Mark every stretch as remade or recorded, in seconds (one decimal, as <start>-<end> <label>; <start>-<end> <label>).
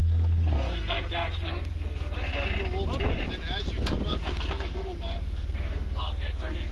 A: 0.0-2.3 remade; 2.3-4.1 recorded; 4.1-6.7 remade